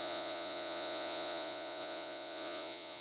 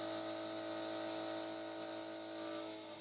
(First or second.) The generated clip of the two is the first